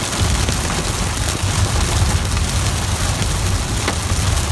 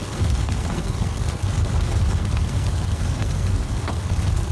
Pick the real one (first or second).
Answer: first